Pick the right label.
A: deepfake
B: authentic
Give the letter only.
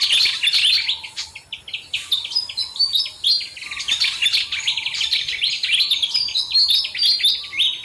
B